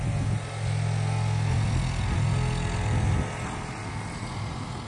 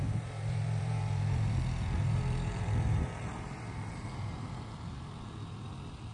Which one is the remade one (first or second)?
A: second